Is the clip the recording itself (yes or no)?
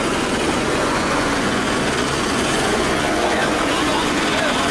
no